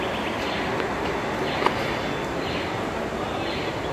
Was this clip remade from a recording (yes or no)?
no